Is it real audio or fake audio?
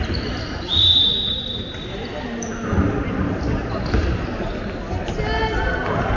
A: real